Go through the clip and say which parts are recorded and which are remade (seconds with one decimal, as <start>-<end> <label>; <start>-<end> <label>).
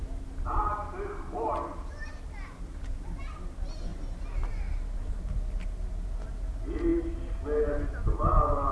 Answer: 0.0-8.7 recorded